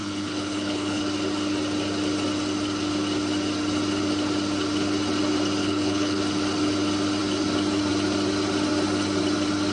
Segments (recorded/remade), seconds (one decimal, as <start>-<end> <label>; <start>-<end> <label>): 0.0-1.0 remade; 1.0-5.6 recorded; 5.6-6.2 remade; 6.2-9.7 recorded